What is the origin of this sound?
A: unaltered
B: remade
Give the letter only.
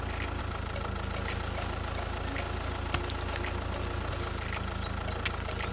A